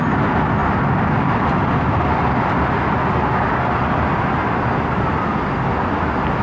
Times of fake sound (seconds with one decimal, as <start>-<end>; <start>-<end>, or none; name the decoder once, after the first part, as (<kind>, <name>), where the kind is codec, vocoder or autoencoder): none